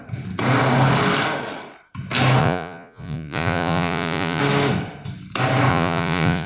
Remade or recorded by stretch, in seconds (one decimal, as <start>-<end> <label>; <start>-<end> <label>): 0.0-2.4 recorded; 2.4-4.4 remade; 4.4-5.7 recorded; 5.7-6.5 remade